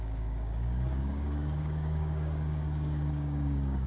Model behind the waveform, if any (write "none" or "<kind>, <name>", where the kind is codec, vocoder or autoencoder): codec, DAC